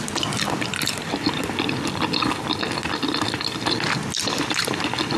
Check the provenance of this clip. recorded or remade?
recorded